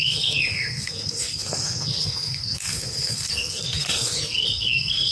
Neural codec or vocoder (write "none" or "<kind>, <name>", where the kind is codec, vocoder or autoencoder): codec, SNAC